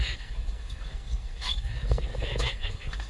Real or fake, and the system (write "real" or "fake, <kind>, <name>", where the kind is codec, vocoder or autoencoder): fake, codec, SNAC